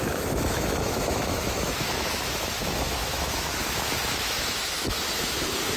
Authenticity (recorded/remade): remade